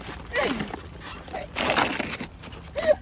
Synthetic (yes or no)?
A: no